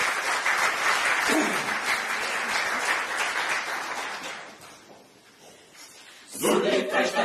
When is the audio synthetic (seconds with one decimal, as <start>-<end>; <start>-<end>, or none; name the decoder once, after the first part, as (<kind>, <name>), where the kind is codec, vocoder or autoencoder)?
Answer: none